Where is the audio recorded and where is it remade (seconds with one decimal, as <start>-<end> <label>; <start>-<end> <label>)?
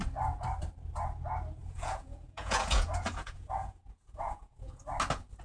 0.0-1.6 recorded; 1.6-4.8 remade; 4.8-5.4 recorded